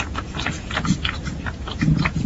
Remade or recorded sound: remade